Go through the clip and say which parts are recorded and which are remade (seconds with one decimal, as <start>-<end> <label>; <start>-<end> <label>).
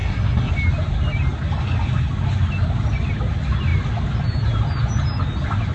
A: 0.0-0.5 remade; 0.5-5.7 recorded